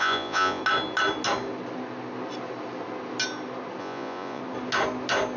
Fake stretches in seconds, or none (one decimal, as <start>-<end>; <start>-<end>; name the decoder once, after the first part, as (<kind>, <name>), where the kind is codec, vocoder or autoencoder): 0.0-0.6 (vocoder, Vocos); 3.8-4.4